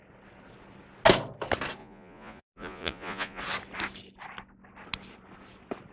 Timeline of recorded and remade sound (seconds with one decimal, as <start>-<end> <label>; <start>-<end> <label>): 0.0-1.8 recorded; 1.8-3.4 remade; 3.4-5.9 recorded